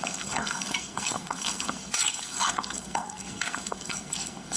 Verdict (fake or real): fake